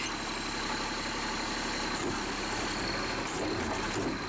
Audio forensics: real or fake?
real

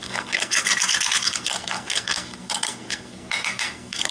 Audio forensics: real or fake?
fake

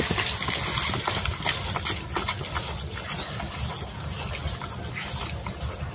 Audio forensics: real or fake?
real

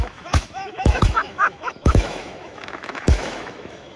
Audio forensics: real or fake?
fake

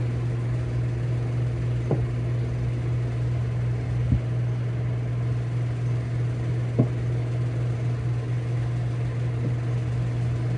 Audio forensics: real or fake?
real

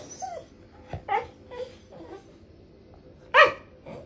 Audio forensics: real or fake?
real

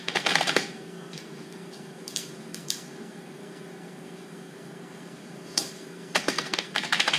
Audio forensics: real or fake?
fake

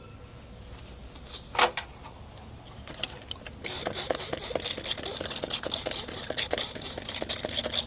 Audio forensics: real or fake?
real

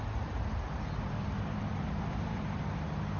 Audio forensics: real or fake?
real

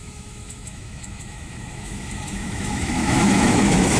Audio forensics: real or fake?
fake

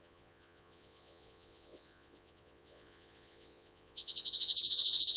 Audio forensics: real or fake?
fake